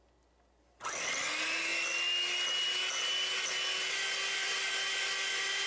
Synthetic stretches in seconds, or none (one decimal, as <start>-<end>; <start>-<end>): none